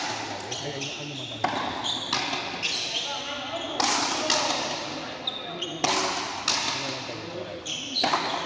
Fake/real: real